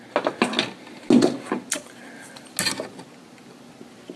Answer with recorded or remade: recorded